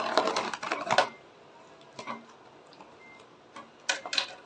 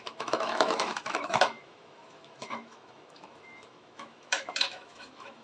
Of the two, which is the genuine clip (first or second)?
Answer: first